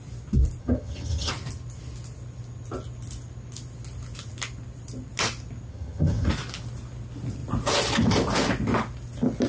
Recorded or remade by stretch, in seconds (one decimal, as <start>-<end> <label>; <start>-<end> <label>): 0.0-0.6 recorded; 0.6-1.3 remade; 1.3-5.7 recorded; 5.7-6.3 remade; 6.3-9.5 recorded